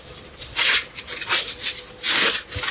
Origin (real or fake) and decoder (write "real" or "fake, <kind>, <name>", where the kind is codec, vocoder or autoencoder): real